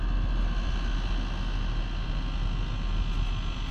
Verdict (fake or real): real